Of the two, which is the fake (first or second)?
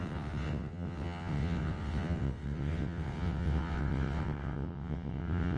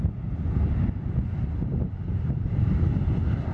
first